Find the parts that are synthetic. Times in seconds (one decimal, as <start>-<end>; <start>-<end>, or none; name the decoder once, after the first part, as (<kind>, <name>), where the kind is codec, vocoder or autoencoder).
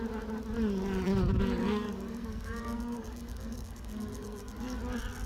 1.6-4.8 (codec, SNAC)